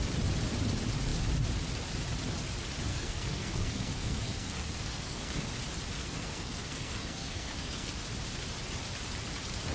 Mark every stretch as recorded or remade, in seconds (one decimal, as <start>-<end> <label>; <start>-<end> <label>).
0.0-2.9 recorded; 2.9-5.5 remade; 5.5-6.0 recorded; 6.0-7.9 remade; 7.9-9.7 recorded